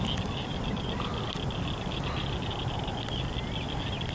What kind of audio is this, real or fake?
real